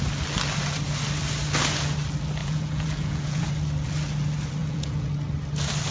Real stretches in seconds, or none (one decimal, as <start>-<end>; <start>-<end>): 0.0-2.4; 3.5-4.6; 5.1-5.9